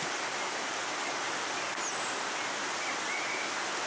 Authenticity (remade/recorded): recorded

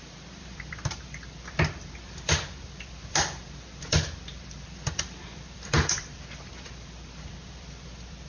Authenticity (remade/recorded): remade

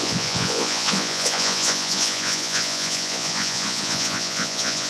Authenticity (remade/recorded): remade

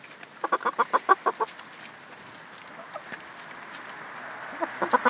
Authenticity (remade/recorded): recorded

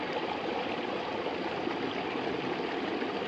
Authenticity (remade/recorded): recorded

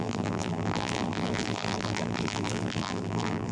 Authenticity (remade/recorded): remade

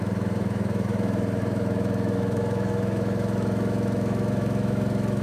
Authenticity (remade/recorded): remade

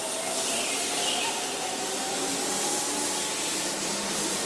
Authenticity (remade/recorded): recorded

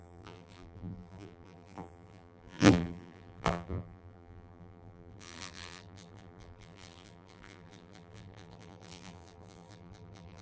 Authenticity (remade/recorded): remade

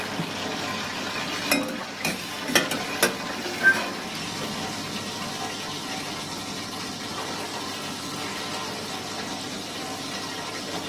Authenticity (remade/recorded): recorded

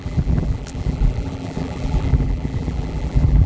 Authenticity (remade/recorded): remade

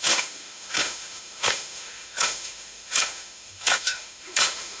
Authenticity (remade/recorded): remade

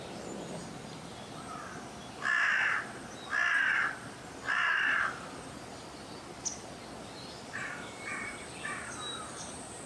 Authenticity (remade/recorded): remade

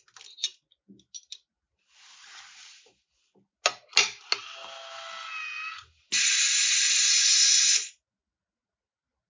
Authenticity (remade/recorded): recorded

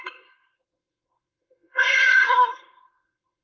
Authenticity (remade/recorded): remade